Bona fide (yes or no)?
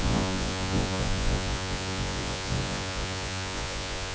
no